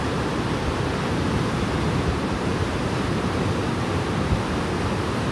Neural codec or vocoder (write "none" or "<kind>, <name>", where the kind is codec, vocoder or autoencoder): vocoder, BigVGAN v2